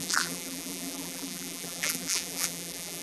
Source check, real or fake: fake